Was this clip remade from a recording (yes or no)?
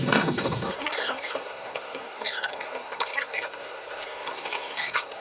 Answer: yes